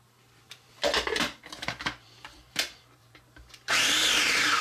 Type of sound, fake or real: fake